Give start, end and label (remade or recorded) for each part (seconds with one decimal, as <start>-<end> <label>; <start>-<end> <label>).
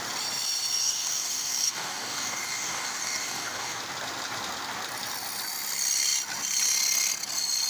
0.0-0.8 recorded; 0.8-3.8 remade; 3.8-7.7 recorded